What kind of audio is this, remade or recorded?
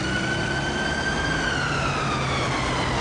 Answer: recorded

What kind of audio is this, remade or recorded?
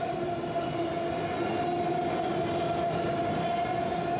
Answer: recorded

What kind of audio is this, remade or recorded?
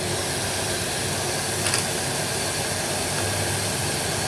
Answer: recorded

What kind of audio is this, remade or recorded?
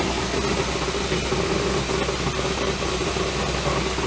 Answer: recorded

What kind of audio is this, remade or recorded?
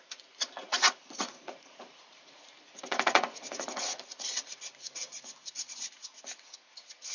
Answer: remade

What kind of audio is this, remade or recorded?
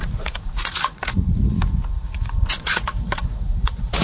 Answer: remade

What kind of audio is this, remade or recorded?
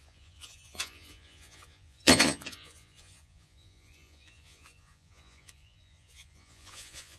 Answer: remade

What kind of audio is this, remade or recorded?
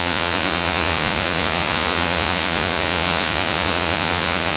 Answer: remade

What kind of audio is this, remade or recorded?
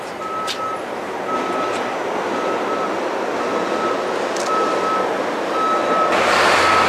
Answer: recorded